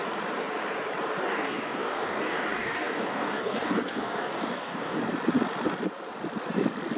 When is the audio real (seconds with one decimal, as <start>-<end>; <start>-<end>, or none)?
0.0-1.3; 5.0-7.0